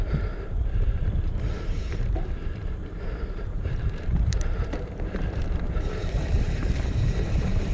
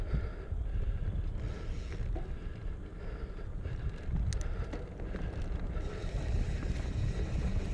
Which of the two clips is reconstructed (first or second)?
first